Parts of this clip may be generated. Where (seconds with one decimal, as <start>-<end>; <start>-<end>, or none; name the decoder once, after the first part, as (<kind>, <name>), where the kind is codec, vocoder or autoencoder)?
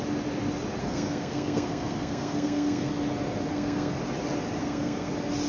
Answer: 0.8-2.9 (codec, SNAC); 3.5-4.0; 4.6-5.1